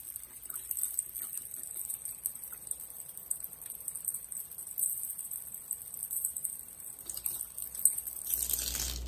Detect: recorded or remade recorded